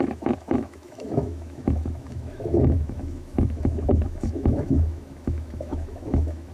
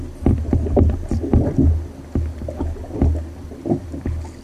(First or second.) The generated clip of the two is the first